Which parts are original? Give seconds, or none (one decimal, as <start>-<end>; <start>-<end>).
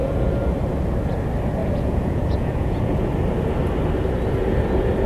0.5-1.6; 3.1-5.1